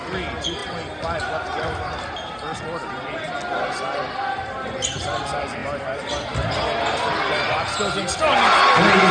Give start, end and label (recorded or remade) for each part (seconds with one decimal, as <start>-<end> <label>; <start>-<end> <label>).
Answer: 0.0-9.1 recorded